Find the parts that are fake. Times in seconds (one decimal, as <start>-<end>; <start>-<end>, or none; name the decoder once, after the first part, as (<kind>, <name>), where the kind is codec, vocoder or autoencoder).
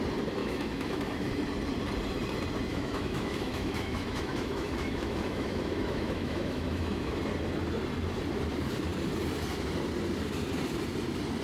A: 0.4-1.3 (autoencoder, DAC-VAE); 2.7-7.2